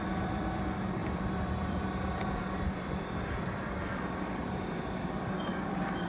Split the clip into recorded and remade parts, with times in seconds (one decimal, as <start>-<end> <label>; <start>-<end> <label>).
0.0-4.4 remade; 4.4-5.4 recorded; 5.4-6.1 remade